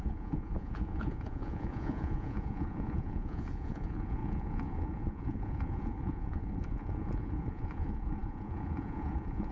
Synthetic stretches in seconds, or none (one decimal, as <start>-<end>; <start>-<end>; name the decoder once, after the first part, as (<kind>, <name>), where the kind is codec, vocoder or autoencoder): 0.0-9.5 (vocoder, Vocos)

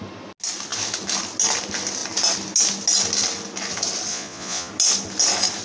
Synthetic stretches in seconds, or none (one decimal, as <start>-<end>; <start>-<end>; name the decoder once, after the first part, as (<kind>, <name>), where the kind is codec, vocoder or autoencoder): 4.1-4.7 (vocoder, Vocos)